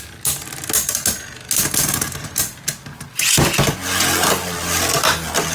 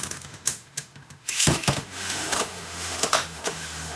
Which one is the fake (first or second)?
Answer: second